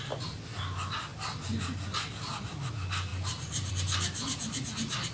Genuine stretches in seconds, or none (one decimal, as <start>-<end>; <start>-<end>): 0.0-5.1